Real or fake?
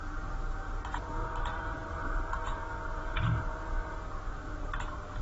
real